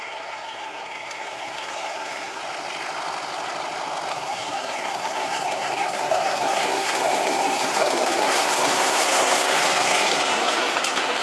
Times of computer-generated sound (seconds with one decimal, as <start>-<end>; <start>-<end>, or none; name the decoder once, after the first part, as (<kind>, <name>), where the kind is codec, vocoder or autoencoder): 0.0-2.4 (codec, SNAC); 4.1-11.2